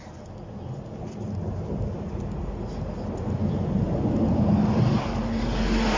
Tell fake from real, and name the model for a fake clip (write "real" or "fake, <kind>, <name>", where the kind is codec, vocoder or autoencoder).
real